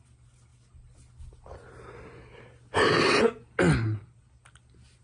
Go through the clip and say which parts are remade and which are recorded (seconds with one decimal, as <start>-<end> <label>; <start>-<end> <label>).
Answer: 0.0-5.0 recorded